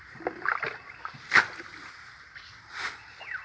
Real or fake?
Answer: real